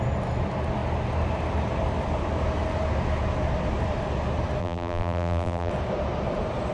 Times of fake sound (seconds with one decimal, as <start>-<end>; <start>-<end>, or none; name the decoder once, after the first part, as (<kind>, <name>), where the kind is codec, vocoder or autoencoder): 4.6-5.7 (vocoder, BigVGAN v2)